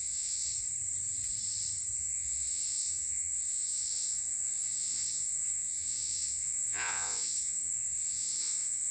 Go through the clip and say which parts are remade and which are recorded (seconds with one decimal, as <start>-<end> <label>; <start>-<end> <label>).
0.0-0.5 remade; 0.5-2.0 recorded; 2.0-8.9 remade